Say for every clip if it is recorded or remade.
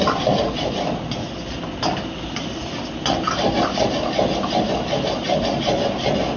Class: recorded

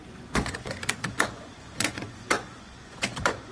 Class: remade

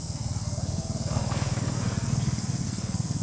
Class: remade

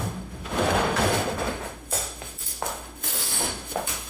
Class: remade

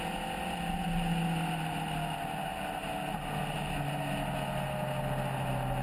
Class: recorded